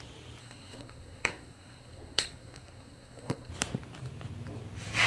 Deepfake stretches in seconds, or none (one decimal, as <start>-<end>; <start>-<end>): 0.4-3.5